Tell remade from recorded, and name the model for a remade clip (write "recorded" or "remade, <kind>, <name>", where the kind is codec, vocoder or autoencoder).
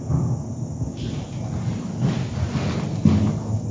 recorded